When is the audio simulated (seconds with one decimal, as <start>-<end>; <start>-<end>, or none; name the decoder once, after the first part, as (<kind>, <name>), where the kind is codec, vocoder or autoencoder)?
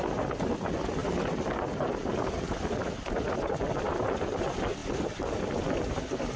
none